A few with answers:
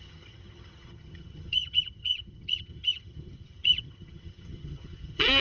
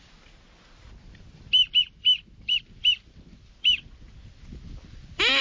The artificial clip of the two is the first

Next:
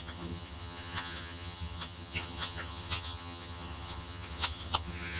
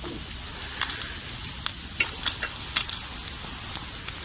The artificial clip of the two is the first